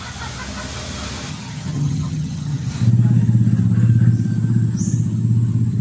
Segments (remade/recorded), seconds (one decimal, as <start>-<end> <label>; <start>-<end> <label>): 0.0-1.3 recorded; 1.3-2.7 remade; 2.7-5.8 recorded

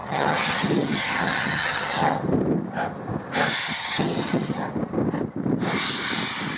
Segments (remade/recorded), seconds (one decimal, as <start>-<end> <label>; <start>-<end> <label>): 0.0-2.2 remade; 2.2-3.7 recorded; 3.7-4.6 remade; 4.6-6.6 recorded

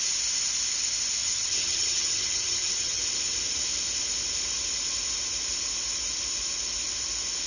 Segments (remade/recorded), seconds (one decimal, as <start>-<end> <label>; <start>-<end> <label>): 0.0-1.2 recorded; 1.2-3.0 remade; 3.0-7.5 recorded

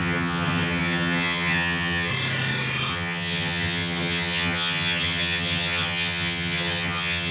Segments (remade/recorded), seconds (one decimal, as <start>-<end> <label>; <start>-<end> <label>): 0.0-2.1 remade; 2.1-2.9 recorded; 2.9-7.3 remade

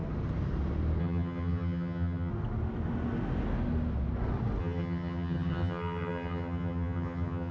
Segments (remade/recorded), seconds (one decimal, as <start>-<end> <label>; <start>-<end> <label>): 0.0-1.0 recorded; 1.0-2.3 remade; 2.3-4.6 recorded; 4.6-7.5 remade

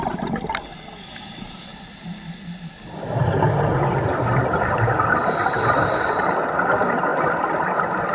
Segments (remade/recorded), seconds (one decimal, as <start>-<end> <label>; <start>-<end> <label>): 0.0-8.1 recorded